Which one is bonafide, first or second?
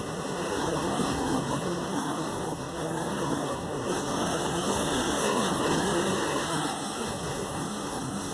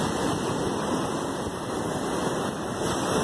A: second